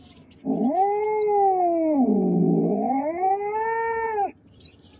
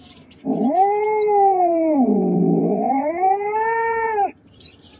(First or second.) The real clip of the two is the first